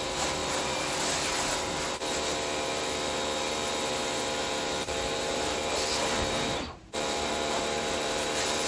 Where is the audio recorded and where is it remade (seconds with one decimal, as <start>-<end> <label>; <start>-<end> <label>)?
0.0-8.7 remade